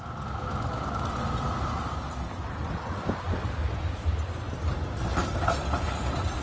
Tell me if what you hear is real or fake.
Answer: real